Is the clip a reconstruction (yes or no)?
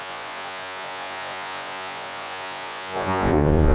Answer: yes